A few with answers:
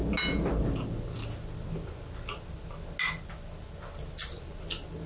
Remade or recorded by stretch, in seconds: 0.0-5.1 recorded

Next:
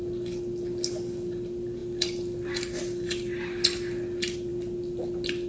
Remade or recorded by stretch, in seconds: 0.0-5.5 recorded

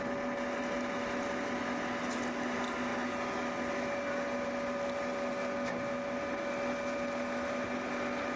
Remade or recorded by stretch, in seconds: 0.0-8.4 recorded

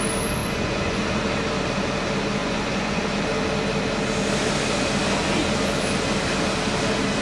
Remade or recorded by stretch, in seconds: 0.0-0.4 recorded; 0.4-1.0 remade; 1.0-2.4 recorded; 2.4-3.0 remade; 3.0-7.2 recorded

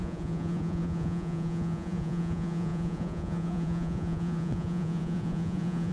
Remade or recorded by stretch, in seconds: 0.0-5.9 remade